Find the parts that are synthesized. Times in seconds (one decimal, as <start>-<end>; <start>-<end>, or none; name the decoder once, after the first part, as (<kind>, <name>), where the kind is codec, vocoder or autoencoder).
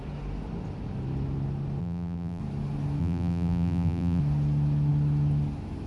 1.8-2.4 (vocoder, BigVGAN v2); 3.0-4.2